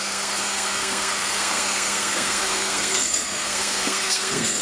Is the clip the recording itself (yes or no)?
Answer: no